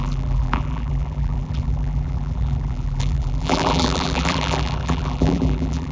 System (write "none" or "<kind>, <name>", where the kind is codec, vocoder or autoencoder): vocoder, BigVGAN v2